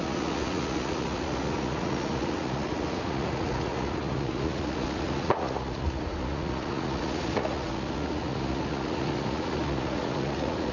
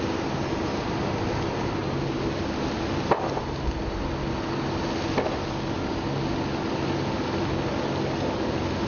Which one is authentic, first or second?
second